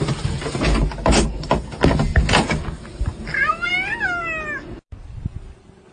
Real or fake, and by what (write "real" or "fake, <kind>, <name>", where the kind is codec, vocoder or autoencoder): real